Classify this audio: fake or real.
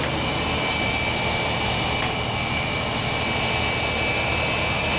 real